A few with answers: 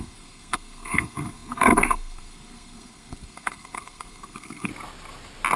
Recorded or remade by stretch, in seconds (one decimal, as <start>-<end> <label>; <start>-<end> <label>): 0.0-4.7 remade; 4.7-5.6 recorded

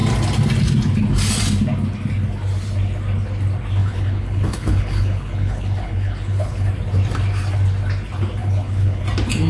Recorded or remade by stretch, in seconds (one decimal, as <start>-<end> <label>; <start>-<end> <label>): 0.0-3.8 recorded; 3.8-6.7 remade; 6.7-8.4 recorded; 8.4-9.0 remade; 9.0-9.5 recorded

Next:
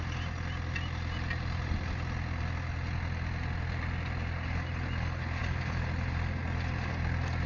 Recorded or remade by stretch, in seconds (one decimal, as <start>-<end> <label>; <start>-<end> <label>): 0.0-7.5 recorded

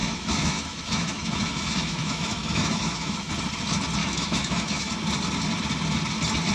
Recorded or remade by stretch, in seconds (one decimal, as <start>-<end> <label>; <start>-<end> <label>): 0.0-3.3 remade; 3.3-4.0 recorded; 4.0-4.9 remade; 4.9-6.5 recorded